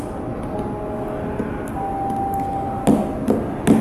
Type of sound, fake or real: real